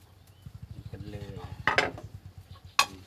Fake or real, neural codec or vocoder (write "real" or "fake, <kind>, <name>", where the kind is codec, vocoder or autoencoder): real